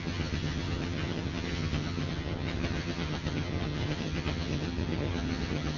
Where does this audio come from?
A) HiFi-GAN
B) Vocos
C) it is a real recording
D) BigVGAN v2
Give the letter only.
A